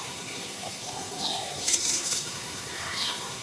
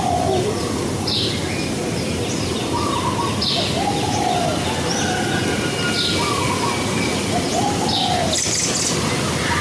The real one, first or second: second